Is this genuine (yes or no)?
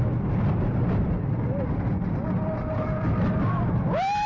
yes